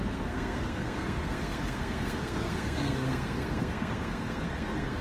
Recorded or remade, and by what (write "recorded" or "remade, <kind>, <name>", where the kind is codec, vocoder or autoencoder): remade, codec, SNAC